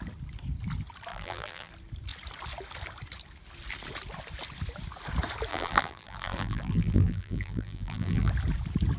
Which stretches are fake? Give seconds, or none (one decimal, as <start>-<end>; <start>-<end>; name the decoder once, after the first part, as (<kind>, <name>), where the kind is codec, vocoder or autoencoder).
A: 1.1-1.7 (vocoder, BigVGAN v2); 5.5-8.3